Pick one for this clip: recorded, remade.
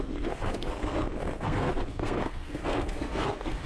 remade